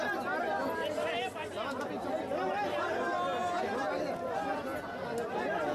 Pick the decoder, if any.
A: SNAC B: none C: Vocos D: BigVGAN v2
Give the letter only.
B